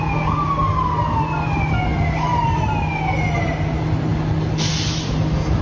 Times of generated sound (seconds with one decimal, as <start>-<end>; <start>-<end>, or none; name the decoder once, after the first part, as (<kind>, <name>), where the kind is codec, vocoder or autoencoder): none